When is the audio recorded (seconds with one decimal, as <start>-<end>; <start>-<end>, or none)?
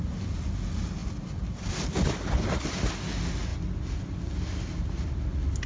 0.0-5.7